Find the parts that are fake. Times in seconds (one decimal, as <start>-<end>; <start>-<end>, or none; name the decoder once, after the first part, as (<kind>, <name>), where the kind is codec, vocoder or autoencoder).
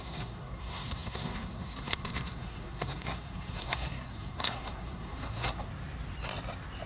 0.0-5.7 (codec, SNAC)